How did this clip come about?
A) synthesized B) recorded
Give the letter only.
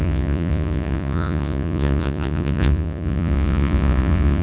A